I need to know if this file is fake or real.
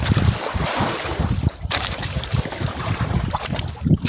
fake